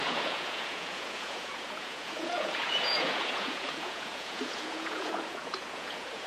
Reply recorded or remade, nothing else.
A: remade